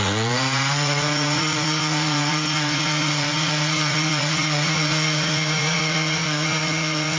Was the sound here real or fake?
fake